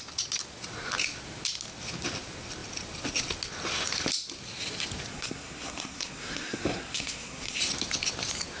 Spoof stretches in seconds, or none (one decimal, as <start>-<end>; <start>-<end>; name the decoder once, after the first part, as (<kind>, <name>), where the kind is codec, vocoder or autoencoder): 5.1-7.6 (codec, SNAC)